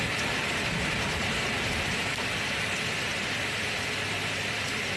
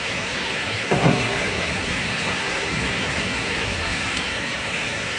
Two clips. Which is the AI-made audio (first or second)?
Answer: second